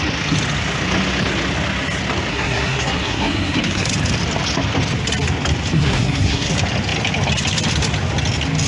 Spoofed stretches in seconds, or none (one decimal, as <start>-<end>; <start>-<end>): 2.3-3.9; 5.7-6.5

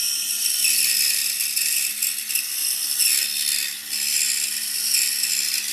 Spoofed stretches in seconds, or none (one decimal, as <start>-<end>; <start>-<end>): none

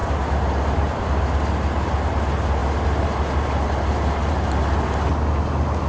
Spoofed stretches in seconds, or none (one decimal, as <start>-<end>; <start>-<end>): 0.0-1.4

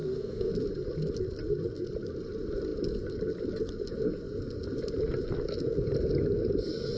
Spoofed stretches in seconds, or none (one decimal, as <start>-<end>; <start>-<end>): 0.0-0.5

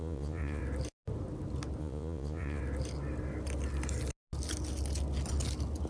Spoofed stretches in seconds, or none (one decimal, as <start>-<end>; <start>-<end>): 0.0-0.6; 1.8-2.6

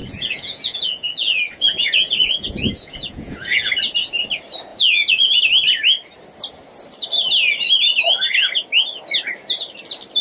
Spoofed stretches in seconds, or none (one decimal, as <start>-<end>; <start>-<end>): 0.0-3.7; 4.7-5.4

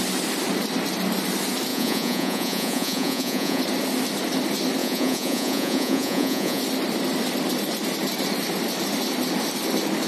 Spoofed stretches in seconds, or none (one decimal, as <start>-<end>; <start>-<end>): 1.7-3.6; 4.8-6.6